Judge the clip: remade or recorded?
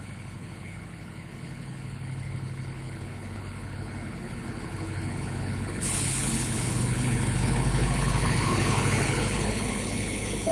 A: remade